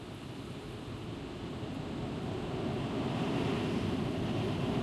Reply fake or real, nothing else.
real